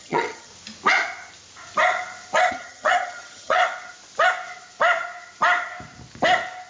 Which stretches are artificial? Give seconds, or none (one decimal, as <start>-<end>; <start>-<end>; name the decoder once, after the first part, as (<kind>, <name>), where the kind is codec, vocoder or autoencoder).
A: 0.0-0.5 (vocoder, HiFi-GAN); 2.5-3.6